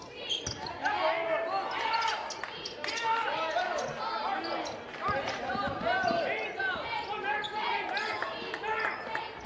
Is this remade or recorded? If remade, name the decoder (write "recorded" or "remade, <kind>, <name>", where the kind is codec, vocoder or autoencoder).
recorded